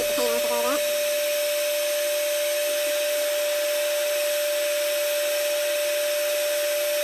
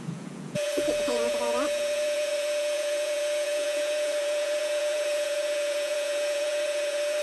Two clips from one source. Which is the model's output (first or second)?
second